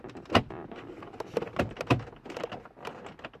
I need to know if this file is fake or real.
real